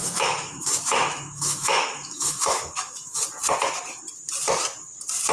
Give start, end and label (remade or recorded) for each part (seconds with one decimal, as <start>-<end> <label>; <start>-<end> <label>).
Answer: 0.0-3.2 remade; 3.2-5.3 recorded